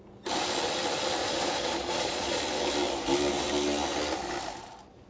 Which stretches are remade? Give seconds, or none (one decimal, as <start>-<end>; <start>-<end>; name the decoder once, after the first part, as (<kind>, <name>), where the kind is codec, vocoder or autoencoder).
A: 1.2-2.4 (vocoder, Vocos)